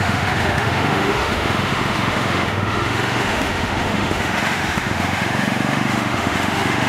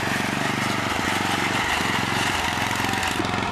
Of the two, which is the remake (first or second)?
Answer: first